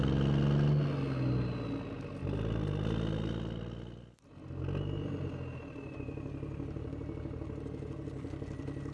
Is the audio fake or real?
real